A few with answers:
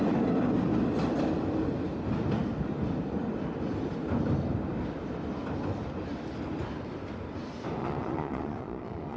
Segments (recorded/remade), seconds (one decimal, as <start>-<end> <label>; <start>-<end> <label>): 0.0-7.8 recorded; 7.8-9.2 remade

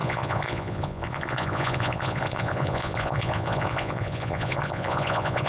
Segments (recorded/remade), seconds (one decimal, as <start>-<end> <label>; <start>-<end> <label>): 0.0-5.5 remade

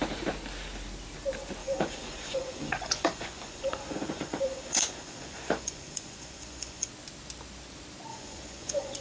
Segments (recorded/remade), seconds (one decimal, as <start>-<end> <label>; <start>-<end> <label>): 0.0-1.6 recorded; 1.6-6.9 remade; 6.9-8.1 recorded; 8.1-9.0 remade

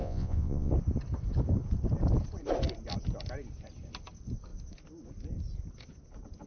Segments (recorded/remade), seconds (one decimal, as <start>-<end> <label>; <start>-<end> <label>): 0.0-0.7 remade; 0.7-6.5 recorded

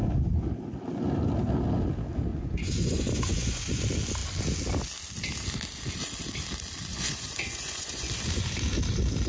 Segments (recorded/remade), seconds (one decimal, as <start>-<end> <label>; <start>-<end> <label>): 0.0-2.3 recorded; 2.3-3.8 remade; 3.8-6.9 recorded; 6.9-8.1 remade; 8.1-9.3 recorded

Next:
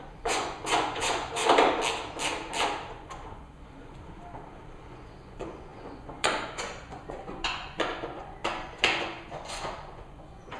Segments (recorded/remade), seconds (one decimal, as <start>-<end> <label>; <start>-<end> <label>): 0.0-1.4 remade; 1.4-2.9 recorded; 2.9-4.2 remade; 4.2-4.8 recorded; 4.8-10.6 remade

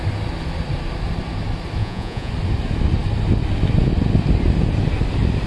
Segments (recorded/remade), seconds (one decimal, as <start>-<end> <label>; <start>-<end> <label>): 0.0-1.8 recorded; 1.8-2.3 remade; 2.3-5.5 recorded